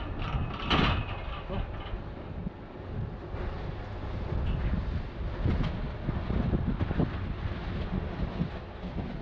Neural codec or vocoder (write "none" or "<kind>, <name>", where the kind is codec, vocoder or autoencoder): none